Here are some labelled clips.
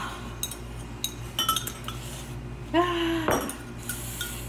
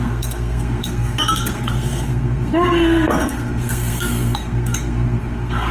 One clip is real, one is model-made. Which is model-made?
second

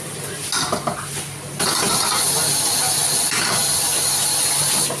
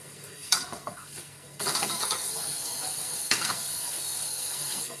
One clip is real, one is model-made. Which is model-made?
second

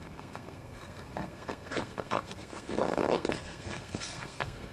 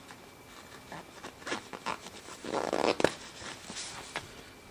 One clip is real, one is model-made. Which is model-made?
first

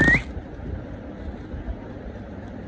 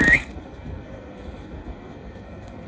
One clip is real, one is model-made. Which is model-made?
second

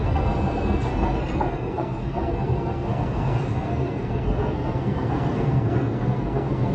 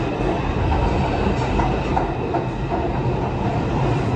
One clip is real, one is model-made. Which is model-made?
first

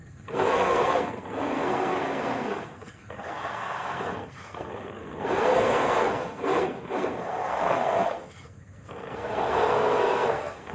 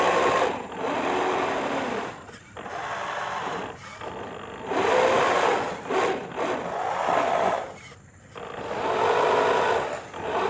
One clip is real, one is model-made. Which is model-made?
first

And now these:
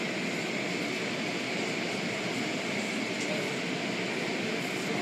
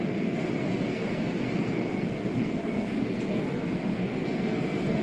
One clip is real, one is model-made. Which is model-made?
second